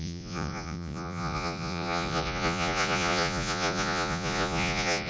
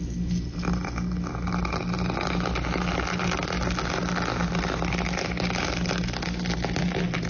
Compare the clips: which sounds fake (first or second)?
first